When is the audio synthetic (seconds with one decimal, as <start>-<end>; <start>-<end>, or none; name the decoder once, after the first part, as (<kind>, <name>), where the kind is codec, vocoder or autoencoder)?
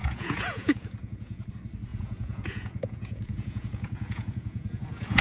0.0-1.5 (vocoder, Vocos); 1.9-5.2